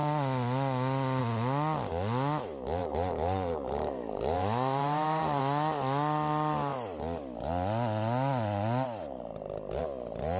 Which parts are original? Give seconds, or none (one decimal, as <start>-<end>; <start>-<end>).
0.0-2.8; 5.4-10.4

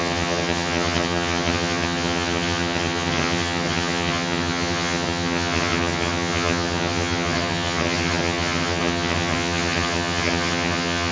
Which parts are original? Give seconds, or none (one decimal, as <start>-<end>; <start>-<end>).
none

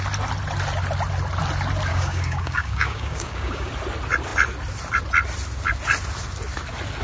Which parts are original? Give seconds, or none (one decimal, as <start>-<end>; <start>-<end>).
0.0-1.9; 3.7-7.0

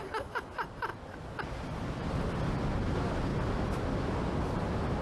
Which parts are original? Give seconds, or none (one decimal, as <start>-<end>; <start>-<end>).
0.0-5.0

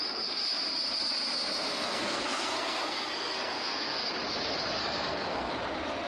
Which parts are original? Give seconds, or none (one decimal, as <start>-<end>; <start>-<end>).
0.0-1.7; 4.1-4.8; 5.5-6.1

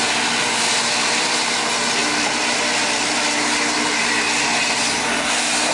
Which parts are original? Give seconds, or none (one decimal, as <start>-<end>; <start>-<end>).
0.0-5.7

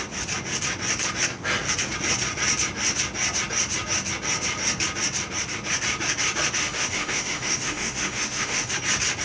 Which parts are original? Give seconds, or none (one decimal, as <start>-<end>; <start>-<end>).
0.0-6.6; 8.7-9.2

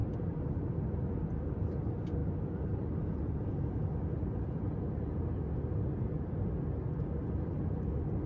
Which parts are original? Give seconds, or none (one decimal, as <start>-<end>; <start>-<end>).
0.0-8.3